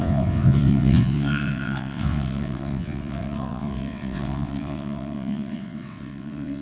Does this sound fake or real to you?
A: fake